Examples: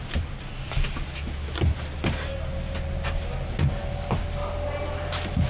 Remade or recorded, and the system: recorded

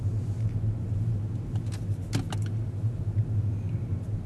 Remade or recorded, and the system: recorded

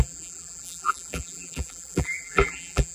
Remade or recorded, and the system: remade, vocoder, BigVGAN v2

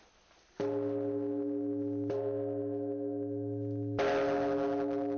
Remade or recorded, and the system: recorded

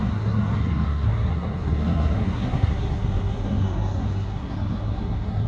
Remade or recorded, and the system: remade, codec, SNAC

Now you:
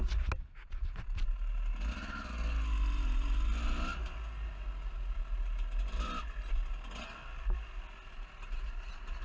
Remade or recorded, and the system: recorded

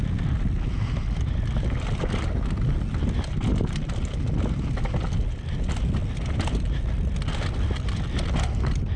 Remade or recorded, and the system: recorded